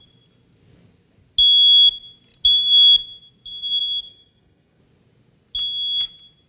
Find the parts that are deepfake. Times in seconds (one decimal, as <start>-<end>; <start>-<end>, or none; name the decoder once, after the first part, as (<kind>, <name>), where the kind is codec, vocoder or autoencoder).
3.8-4.8 (codec, DAC)